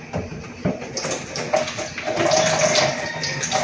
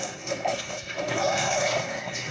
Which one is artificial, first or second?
second